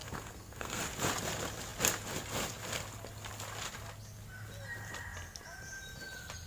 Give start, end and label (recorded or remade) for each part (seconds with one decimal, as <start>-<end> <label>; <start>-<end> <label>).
0.0-0.8 remade; 0.8-6.5 recorded

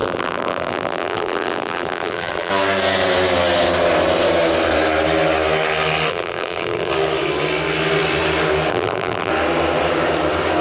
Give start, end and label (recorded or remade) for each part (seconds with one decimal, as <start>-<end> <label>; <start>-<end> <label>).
0.0-2.5 remade; 2.5-6.1 recorded; 6.1-6.9 remade; 6.9-8.7 recorded; 8.7-9.3 remade; 9.3-10.6 recorded